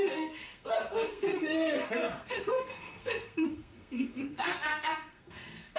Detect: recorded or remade remade